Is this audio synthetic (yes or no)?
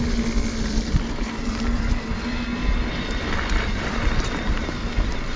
no